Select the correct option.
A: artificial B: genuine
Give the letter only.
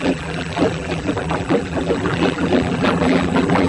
A